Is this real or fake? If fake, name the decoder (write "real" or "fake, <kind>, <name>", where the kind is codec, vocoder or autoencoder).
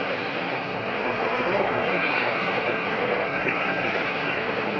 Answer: fake, codec, SNAC